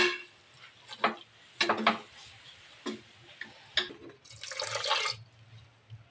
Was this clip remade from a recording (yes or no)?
no